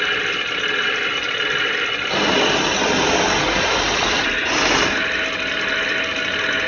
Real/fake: real